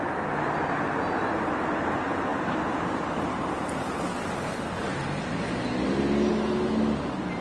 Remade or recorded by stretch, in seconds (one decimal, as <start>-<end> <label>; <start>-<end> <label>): 0.0-7.4 recorded